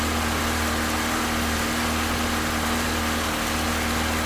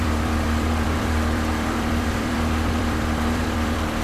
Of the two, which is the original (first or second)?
first